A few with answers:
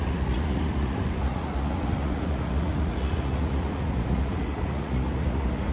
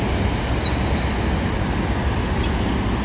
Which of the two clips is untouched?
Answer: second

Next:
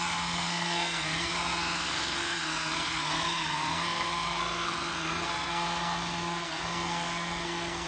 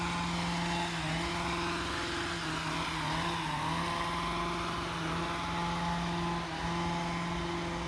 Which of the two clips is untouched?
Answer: second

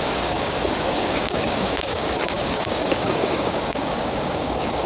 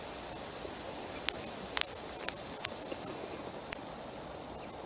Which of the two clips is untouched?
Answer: second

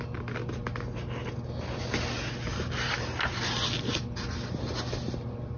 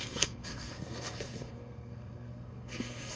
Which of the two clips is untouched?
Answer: first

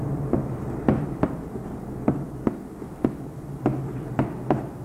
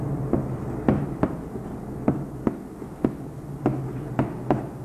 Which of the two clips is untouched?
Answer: second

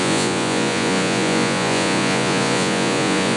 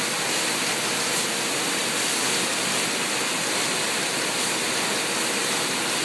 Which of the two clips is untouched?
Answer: second